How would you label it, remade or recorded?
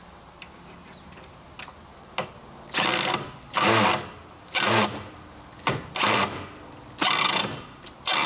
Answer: recorded